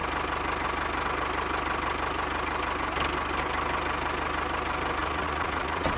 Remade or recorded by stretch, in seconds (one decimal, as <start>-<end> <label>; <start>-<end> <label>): 0.0-5.0 recorded; 5.0-6.0 remade